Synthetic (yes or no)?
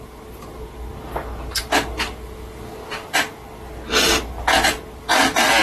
no